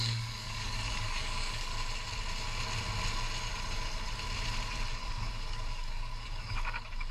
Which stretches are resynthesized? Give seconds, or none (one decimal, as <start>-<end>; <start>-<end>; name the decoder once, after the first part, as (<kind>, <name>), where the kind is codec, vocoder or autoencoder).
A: 0.0-1.7 (codec, DAC); 4.9-7.1